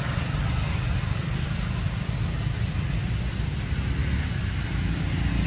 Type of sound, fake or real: real